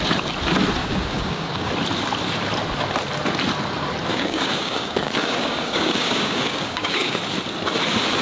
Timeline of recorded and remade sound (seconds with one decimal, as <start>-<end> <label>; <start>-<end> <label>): 0.0-0.8 recorded; 0.8-1.7 remade; 1.7-4.1 recorded; 4.1-7.2 remade; 7.2-8.2 recorded